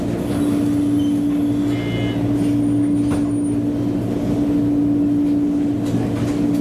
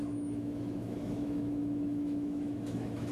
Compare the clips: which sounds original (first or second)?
first